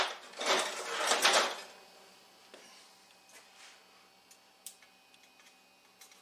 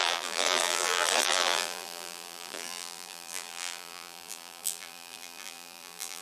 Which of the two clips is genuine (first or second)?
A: first